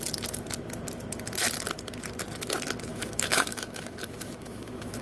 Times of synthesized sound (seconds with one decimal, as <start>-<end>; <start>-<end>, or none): 2.9-5.0